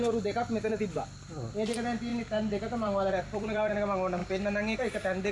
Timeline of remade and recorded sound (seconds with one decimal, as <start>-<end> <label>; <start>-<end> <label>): 0.0-2.1 recorded; 2.1-3.7 remade; 3.7-4.2 recorded; 4.2-4.8 remade; 4.8-5.3 recorded